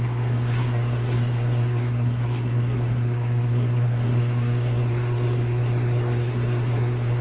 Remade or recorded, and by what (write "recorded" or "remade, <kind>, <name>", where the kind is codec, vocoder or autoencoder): remade, codec, SNAC